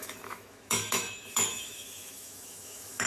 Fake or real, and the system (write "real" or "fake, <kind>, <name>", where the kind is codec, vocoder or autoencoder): fake, autoencoder, DAC-VAE